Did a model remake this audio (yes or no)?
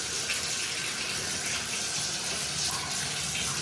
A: no